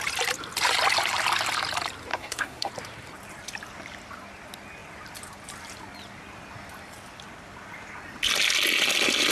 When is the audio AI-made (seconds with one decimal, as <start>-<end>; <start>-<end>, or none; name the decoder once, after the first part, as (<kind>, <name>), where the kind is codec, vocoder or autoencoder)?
2.1-2.7 (codec, SNAC)